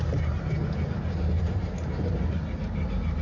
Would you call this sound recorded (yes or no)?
yes